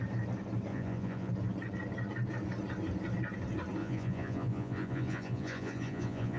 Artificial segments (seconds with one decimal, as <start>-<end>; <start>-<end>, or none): 0.7-1.3; 3.8-6.4